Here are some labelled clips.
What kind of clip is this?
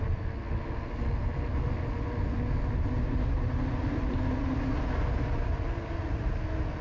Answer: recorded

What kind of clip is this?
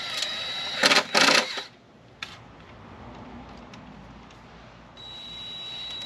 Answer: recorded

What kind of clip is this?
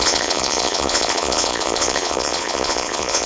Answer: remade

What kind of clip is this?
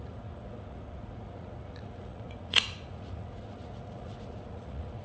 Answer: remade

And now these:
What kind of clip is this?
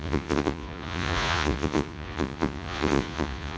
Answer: remade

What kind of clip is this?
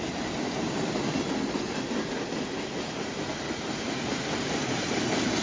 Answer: recorded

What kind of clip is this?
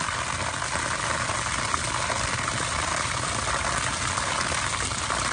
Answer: recorded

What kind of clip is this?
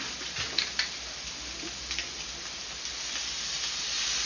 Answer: recorded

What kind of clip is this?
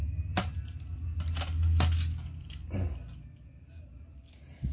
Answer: recorded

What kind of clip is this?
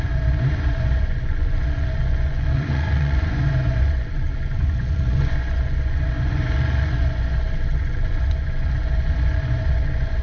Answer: remade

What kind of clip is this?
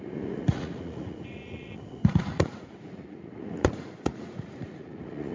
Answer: remade